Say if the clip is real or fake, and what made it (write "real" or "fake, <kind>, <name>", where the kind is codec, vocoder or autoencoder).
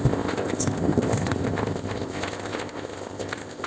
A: fake, codec, ZipCodec